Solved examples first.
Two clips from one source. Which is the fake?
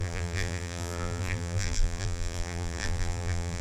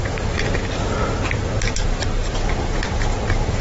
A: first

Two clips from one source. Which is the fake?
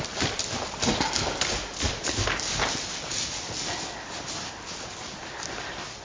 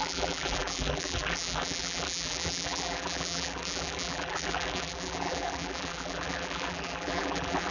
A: second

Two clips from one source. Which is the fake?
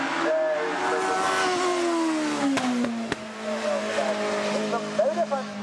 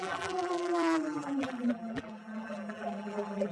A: second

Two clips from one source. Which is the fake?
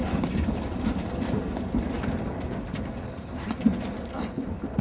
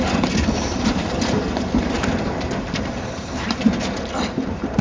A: second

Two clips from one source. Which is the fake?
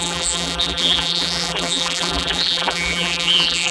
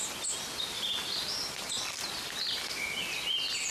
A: first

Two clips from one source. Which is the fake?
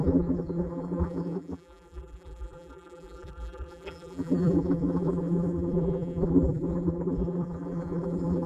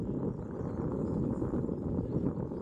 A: first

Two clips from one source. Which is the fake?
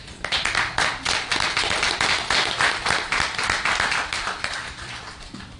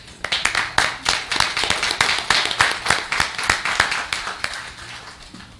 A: first